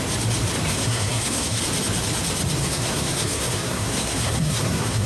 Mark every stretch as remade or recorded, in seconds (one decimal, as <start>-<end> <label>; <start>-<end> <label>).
0.0-0.7 recorded; 0.7-1.6 remade; 1.6-2.6 recorded; 2.6-5.1 remade